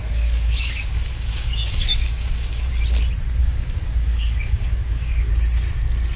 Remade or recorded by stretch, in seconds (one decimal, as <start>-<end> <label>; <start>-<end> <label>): 0.0-2.7 remade; 2.7-3.4 recorded; 3.4-5.3 remade; 5.3-6.2 recorded